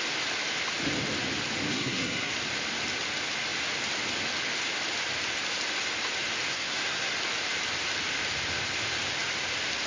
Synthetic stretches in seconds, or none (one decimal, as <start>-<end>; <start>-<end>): 1.7-2.3; 6.5-7.1